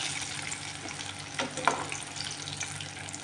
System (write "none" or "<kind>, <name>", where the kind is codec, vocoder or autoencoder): none